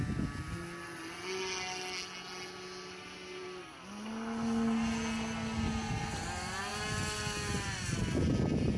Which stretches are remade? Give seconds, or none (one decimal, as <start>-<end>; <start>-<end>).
none